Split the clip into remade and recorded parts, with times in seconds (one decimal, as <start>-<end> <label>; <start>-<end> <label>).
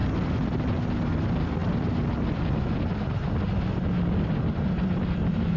0.0-5.6 recorded